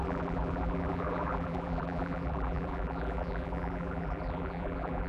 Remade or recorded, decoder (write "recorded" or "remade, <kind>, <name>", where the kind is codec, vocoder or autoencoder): remade, vocoder, BigVGAN v2